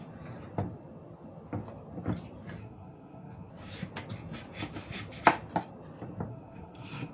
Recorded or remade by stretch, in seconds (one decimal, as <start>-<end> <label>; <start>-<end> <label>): 0.0-2.6 recorded; 2.6-3.5 remade; 3.5-6.3 recorded; 6.3-7.1 remade